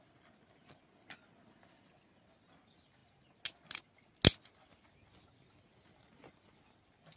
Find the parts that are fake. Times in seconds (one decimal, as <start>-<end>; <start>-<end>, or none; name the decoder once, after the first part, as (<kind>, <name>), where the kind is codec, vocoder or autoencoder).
none